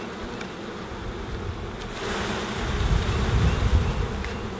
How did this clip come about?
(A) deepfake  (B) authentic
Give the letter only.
B